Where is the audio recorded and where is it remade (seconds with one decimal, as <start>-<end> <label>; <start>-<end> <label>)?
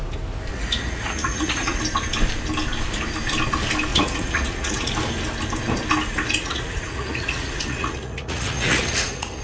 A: 0.0-0.5 recorded; 0.5-1.8 remade; 1.8-3.9 recorded; 3.9-4.9 remade; 4.9-6.4 recorded; 6.4-9.4 remade